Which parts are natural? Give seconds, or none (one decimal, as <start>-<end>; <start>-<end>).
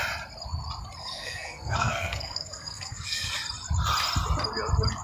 0.0-1.0; 3.3-5.0